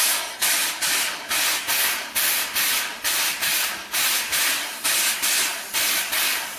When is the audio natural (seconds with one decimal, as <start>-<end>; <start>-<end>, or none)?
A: 0.0-6.6